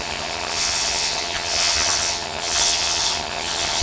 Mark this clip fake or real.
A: fake